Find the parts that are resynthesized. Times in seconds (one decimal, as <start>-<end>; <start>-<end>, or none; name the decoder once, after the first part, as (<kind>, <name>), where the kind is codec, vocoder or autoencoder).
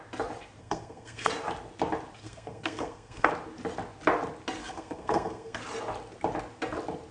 0.6-1.3 (codec, SNAC); 2.2-3.3; 4.6-5.6